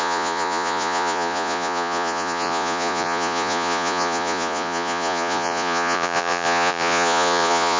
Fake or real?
fake